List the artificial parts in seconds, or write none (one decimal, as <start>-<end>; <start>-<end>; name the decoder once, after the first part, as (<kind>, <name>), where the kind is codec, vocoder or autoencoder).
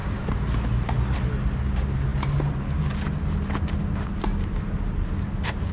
0.0-1.3 (vocoder, BigVGAN v2)